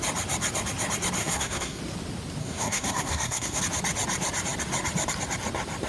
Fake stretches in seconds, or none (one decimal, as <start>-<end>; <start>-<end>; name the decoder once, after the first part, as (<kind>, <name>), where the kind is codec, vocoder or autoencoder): 1.2-1.8 (codec, SNAC); 2.4-3.6